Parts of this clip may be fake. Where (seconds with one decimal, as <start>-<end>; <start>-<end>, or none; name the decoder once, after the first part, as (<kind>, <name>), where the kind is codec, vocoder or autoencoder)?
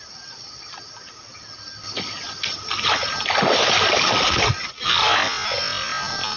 none